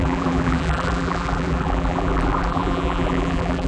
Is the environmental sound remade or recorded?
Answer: remade